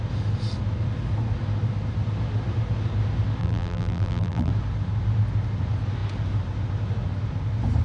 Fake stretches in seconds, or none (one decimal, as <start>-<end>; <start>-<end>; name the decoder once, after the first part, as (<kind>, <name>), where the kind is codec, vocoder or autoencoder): 3.4-4.5 (vocoder, BigVGAN v2)